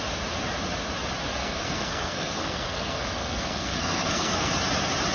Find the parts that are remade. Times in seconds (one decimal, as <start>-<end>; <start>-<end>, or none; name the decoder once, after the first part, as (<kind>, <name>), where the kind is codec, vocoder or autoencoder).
1.4-4.5 (codec, SNAC)